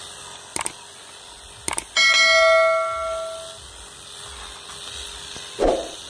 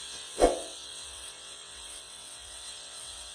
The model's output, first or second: second